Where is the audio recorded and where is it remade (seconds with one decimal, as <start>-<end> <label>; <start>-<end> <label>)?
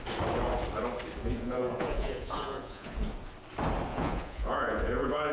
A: 0.0-1.2 recorded; 1.2-3.0 remade; 3.0-3.9 recorded; 3.9-5.3 remade